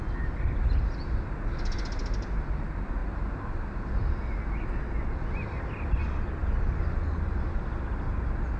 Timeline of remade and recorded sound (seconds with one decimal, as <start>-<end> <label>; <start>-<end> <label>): 0.0-8.6 recorded